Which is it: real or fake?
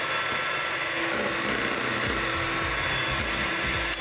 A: real